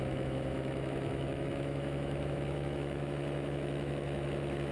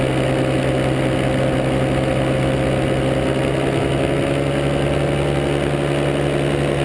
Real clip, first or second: second